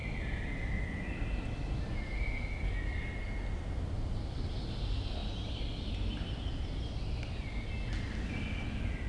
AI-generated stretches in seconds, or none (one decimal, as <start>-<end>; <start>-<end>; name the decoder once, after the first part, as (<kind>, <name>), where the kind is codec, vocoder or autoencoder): none